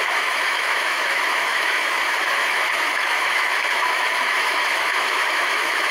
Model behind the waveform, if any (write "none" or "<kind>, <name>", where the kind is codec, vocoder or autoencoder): autoencoder, DAC-VAE